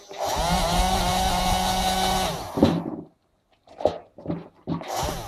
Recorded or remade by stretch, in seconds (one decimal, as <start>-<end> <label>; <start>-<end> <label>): 0.0-5.3 recorded